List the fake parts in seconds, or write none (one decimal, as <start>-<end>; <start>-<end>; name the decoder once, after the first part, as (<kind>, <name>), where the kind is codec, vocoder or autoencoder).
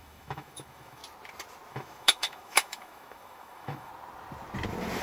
0.0-1.0 (autoencoder, DAC-VAE); 1.7-3.9